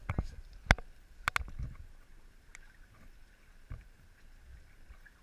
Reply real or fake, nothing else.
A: real